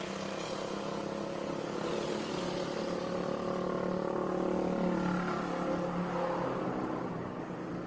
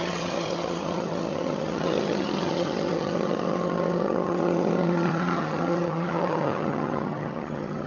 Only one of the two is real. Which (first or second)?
first